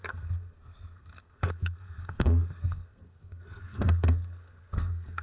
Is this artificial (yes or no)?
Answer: yes